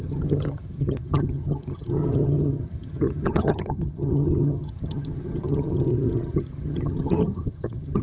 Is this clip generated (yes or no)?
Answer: yes